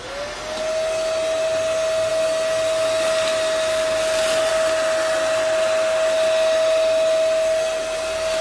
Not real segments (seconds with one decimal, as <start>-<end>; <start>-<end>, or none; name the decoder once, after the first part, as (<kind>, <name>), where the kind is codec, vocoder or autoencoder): none